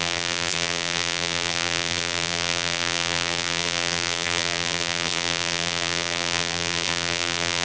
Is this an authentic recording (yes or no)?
no